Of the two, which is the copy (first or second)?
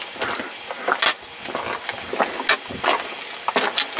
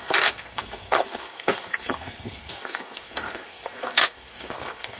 second